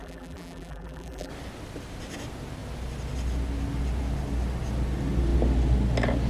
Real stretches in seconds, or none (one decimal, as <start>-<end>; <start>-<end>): 1.3-6.3